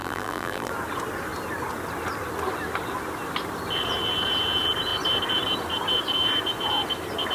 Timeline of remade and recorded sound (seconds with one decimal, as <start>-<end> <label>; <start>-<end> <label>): 0.0-0.7 remade; 0.7-7.3 recorded